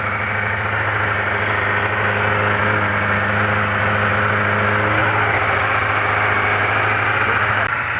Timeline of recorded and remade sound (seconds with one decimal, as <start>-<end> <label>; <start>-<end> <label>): 0.0-8.0 recorded